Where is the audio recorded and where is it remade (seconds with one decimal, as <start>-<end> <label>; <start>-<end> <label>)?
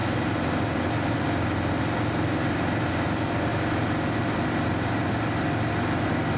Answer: 0.0-6.4 recorded